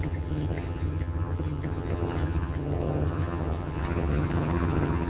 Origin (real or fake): fake